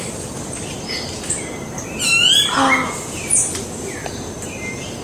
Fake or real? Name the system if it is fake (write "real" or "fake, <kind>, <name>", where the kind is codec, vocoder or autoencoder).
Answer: real